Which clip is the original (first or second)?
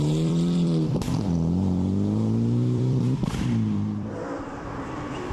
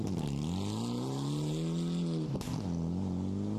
second